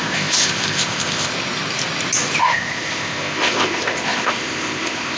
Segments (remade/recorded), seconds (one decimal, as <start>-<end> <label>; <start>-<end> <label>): 0.0-1.3 remade; 1.3-2.4 recorded; 2.4-5.2 remade